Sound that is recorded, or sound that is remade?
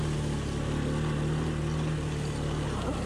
recorded